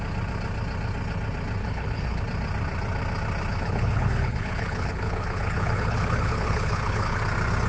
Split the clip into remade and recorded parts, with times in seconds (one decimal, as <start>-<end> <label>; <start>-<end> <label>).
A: 0.0-1.6 recorded; 1.6-2.2 remade; 2.2-3.5 recorded; 3.5-7.2 remade; 7.2-7.7 recorded